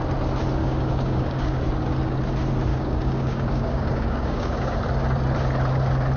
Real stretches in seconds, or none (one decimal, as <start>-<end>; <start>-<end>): 0.0-0.6; 1.6-2.7; 4.8-6.2